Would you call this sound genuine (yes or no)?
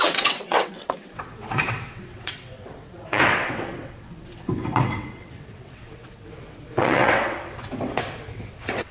no